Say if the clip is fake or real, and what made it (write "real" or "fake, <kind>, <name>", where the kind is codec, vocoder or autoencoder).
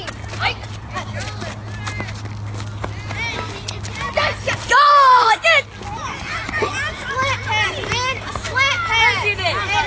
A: real